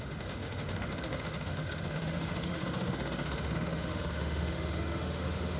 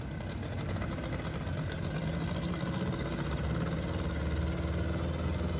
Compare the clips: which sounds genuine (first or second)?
second